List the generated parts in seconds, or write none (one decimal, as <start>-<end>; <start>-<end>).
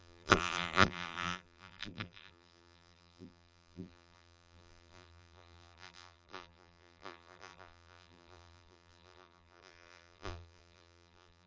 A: 0.0-11.5